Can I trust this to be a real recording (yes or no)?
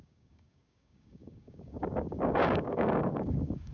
no